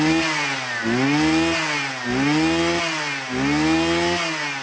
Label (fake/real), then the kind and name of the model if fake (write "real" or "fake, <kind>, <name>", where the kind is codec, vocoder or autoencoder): real